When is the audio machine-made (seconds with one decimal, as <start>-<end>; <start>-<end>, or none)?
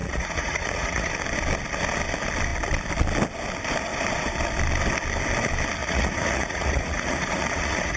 0.0-1.1; 5.8-8.0